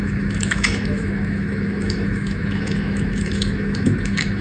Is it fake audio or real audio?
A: fake